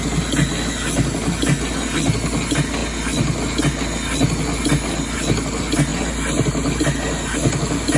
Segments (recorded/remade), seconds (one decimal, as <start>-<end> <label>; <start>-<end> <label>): 0.0-8.0 recorded